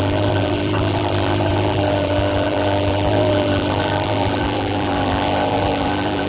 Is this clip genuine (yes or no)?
no